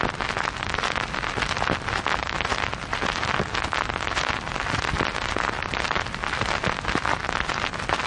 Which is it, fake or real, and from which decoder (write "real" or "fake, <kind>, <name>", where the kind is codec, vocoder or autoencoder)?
real